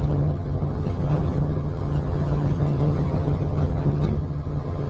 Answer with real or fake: fake